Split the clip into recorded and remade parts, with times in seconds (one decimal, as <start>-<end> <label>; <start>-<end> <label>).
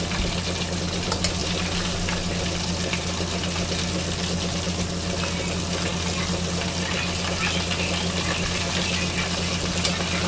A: 0.0-10.3 recorded